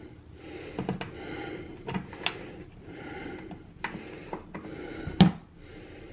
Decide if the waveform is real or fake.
real